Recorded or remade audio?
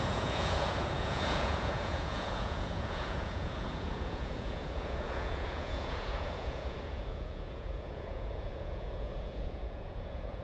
remade